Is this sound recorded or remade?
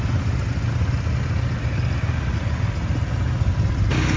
recorded